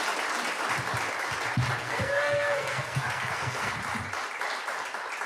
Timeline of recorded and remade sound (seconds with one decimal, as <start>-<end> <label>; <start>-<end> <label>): 0.0-1.8 recorded; 1.8-3.8 remade; 3.8-5.3 recorded